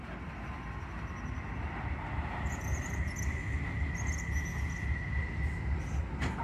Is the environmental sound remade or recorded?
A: recorded